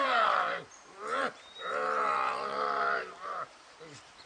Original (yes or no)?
no